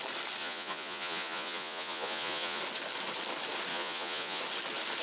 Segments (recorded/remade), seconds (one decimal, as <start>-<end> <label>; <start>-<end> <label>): 0.0-0.4 recorded; 0.4-2.6 remade; 2.6-3.7 recorded; 3.7-4.4 remade; 4.4-5.0 recorded